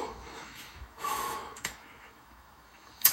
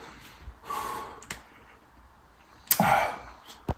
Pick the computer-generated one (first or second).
first